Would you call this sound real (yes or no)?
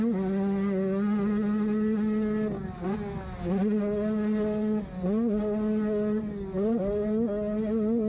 yes